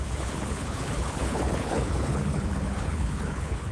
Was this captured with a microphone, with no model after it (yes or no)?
no